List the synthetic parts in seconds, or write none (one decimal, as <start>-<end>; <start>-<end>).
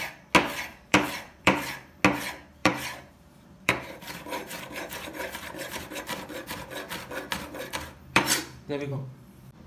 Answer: 0.7-2.0; 2.6-6.0; 8.1-9.7